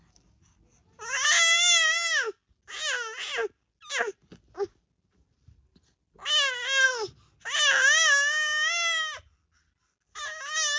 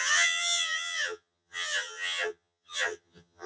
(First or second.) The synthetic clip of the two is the second